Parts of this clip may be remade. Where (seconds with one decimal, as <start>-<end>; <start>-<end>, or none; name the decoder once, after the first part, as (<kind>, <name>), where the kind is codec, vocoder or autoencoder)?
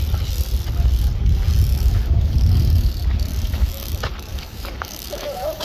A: 1.7-2.9 (codec, DAC); 3.3-3.9; 4.3-5.6